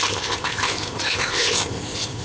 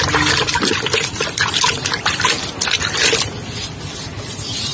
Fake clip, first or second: first